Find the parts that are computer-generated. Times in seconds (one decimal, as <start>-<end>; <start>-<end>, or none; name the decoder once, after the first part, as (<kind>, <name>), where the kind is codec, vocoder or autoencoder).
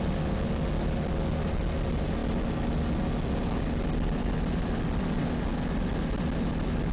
none